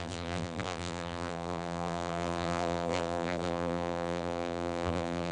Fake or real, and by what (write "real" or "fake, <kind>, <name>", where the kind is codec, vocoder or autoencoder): fake, vocoder, BigVGAN v2